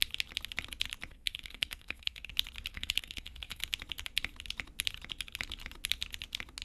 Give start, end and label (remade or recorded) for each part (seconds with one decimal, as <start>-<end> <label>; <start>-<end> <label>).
0.0-1.1 recorded; 1.1-2.3 remade; 2.3-2.7 recorded; 2.7-3.6 remade; 3.6-6.6 recorded